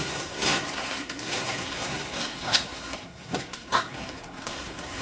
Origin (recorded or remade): remade